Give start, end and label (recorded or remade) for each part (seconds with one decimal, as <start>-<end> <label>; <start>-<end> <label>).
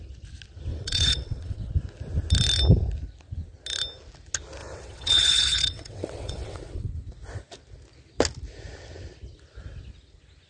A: 0.0-0.7 recorded; 0.7-1.7 remade; 1.7-4.6 recorded; 4.6-6.9 remade; 6.9-10.5 recorded